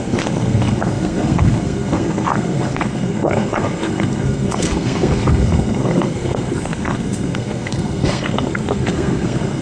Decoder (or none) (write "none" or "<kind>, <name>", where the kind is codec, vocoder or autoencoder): codec, SNAC